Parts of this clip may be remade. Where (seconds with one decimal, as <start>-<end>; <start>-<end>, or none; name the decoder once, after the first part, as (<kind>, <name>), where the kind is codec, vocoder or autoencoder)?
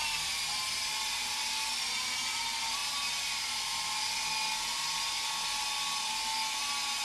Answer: none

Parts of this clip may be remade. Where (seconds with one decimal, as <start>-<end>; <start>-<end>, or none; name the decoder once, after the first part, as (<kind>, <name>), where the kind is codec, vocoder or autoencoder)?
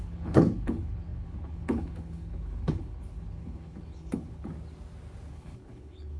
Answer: 0.0-4.5 (codec, HILCodec); 5.3-6.2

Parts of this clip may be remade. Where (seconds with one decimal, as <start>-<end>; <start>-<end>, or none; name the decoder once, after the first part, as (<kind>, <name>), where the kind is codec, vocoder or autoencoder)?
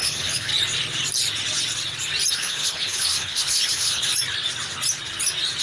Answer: 0.0-0.5 (codec, HILCodec); 2.3-4.1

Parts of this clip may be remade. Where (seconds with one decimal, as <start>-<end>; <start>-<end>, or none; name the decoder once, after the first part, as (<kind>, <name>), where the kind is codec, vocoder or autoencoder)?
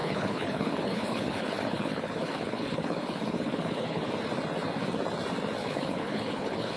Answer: 0.0-4.1 (codec, HILCodec); 5.6-6.8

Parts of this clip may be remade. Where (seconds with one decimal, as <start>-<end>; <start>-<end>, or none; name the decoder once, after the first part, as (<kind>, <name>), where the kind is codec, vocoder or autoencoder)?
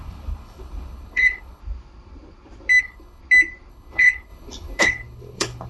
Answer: 0.0-1.6 (codec, HILCodec); 2.8-3.2; 3.7-5.7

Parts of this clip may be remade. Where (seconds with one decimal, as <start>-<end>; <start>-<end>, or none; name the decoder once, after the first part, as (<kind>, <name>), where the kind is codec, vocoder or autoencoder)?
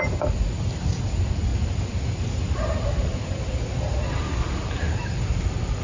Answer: none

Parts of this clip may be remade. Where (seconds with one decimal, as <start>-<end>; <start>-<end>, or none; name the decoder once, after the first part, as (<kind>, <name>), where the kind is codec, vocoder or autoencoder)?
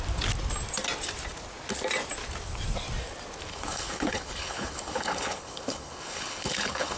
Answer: 3.5-7.0 (codec, HILCodec)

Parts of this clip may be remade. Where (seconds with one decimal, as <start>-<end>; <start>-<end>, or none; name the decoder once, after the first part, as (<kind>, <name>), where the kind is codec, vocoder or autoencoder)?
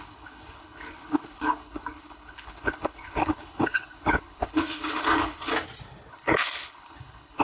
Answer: 0.0-5.5 (codec, HILCodec); 6.1-7.4